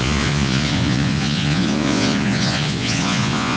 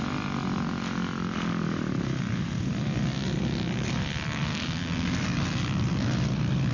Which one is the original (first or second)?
second